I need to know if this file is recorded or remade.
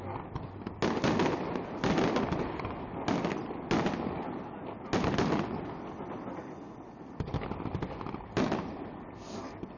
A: recorded